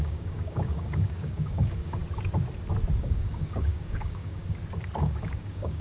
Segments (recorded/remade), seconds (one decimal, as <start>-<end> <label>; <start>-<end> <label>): 0.0-2.0 remade; 2.0-3.0 recorded; 3.0-4.4 remade; 4.4-5.0 recorded; 5.0-5.8 remade